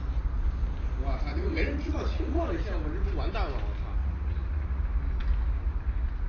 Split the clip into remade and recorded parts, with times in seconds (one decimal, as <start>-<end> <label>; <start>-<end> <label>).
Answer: 0.0-1.3 recorded; 1.3-2.5 remade; 2.5-4.0 recorded; 4.0-4.8 remade; 4.8-6.3 recorded